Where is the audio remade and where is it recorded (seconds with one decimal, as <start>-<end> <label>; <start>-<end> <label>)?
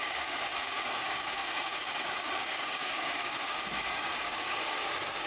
0.0-5.3 remade